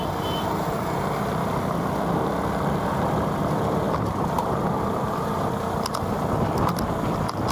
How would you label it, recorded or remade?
recorded